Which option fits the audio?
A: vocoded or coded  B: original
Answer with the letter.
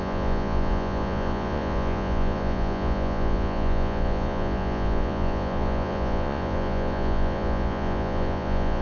A